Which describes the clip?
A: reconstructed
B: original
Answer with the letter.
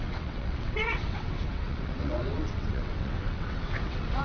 A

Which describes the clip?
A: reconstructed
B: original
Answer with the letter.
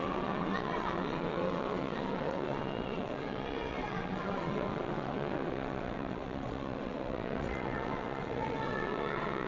A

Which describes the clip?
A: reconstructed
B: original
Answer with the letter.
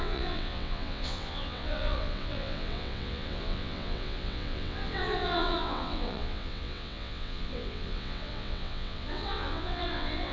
A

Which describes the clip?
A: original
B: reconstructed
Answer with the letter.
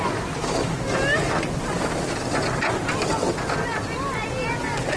A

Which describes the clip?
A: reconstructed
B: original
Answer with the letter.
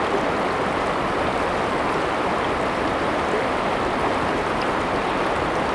B